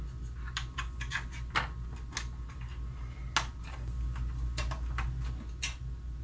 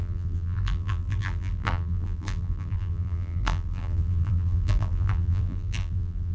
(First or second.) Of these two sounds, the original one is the first